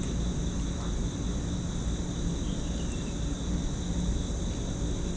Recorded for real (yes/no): yes